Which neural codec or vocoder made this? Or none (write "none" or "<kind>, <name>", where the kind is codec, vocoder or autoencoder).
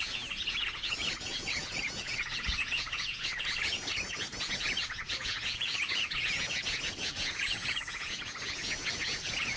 vocoder, Vocos